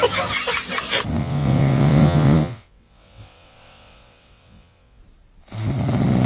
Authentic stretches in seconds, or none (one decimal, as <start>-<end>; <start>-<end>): 0.0-1.2; 5.0-6.3